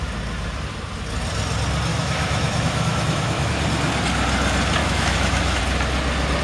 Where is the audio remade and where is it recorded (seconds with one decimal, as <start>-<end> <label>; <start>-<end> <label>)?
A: 0.0-1.9 recorded; 1.9-3.5 remade; 3.5-4.8 recorded; 4.8-5.6 remade; 5.6-6.4 recorded